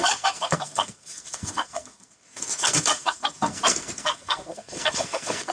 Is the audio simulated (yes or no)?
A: yes